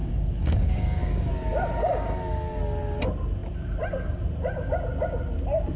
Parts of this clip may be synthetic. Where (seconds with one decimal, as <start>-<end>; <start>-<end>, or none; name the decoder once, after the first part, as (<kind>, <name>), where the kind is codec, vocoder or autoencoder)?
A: 0.0-1.3 (codec, DAC); 1.8-2.6